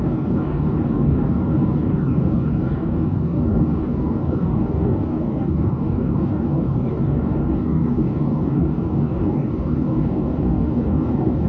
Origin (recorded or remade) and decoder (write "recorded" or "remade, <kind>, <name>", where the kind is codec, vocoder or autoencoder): remade, codec, DAC